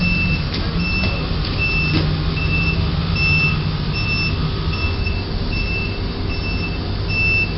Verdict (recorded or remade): recorded